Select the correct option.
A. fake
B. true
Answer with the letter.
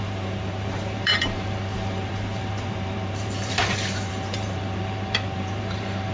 A